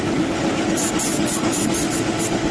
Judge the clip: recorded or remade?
recorded